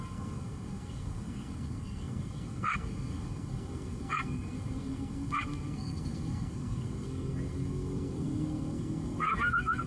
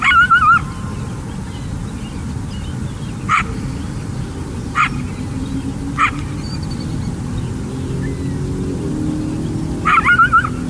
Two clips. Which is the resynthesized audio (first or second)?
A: first